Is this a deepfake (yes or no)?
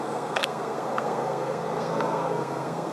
yes